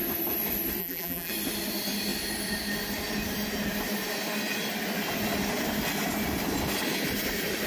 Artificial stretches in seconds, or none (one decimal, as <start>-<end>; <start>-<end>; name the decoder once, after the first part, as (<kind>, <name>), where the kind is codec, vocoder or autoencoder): 0.8-1.3 (vocoder, BigVGAN v2)

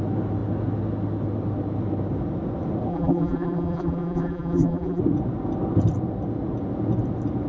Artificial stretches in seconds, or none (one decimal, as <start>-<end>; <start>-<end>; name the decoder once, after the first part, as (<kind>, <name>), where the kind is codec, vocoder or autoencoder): 2.9-5.0 (vocoder, BigVGAN v2)